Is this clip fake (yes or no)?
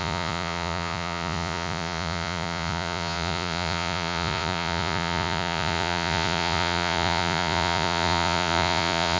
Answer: yes